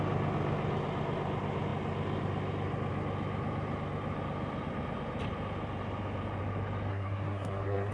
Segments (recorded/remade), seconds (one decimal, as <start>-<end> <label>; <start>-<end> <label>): 0.0-6.9 recorded; 6.9-7.9 remade